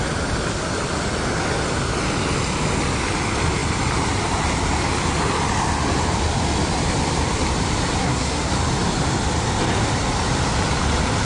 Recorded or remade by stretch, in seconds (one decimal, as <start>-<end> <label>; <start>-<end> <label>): 0.0-8.0 recorded; 8.0-8.5 remade; 8.5-11.2 recorded